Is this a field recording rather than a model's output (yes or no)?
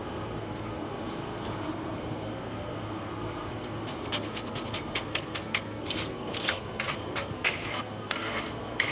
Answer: no